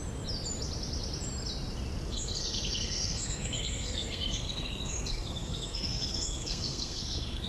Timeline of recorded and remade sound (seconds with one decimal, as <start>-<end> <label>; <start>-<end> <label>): 0.0-2.1 recorded; 2.1-7.5 remade